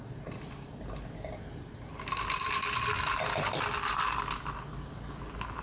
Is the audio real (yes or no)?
yes